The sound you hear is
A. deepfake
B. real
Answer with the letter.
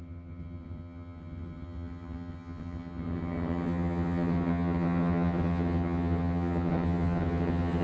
A